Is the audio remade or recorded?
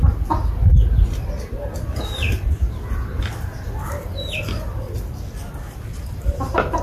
recorded